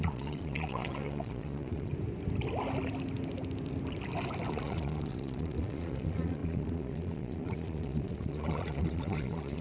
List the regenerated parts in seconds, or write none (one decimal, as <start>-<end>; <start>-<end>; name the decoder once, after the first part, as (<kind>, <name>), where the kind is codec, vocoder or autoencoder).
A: 0.0-1.9 (vocoder, Vocos); 4.5-9.6

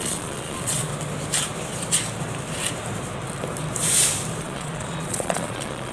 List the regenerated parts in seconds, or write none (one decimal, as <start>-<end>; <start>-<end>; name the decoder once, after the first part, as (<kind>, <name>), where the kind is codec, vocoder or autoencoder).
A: 0.0-0.9 (vocoder, Vocos); 4.4-5.9

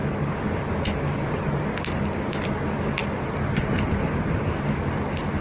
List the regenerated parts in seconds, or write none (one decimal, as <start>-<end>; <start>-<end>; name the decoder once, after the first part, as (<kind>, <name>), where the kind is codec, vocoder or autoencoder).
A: none

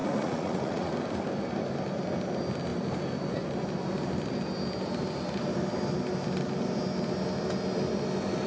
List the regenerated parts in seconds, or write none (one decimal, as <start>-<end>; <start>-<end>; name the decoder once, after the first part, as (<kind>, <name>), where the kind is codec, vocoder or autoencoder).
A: 0.0-0.9 (vocoder, Vocos)

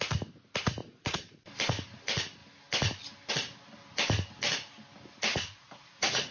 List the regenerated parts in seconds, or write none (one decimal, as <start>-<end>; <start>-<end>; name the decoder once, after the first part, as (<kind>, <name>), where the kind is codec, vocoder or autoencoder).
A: 0.8-1.4 (vocoder, Vocos); 5.3-6.3

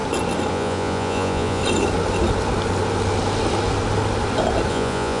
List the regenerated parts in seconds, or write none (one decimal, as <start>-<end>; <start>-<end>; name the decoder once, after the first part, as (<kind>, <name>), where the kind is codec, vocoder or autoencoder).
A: 0.5-1.6 (vocoder, Vocos); 4.7-5.2

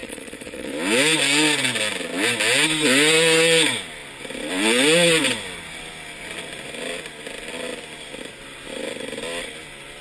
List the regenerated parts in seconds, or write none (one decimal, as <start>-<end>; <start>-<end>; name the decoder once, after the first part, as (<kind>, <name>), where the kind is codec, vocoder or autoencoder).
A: 0.0-0.7 (vocoder, Vocos)

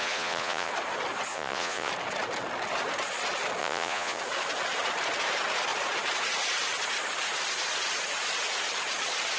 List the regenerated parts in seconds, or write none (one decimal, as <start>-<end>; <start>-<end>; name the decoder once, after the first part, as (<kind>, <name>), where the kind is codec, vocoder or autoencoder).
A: 0.0-0.7 (vocoder, Vocos); 1.3-1.9; 3.6-4.2